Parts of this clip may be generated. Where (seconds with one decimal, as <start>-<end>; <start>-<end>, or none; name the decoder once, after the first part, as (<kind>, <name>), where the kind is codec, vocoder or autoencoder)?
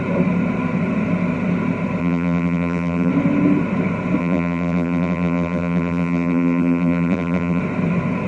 2.0-3.1 (vocoder, BigVGAN v2); 4.2-7.6